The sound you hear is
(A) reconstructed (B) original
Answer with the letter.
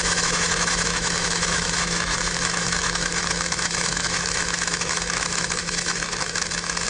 A